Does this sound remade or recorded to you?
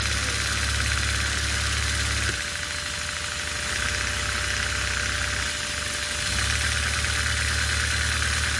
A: recorded